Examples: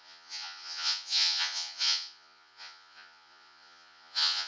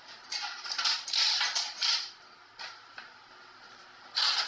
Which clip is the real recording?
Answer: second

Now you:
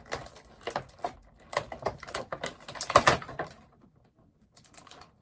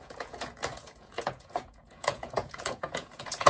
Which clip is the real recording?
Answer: first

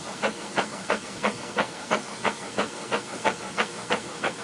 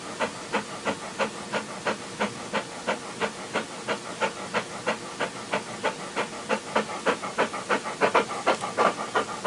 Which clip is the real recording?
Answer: second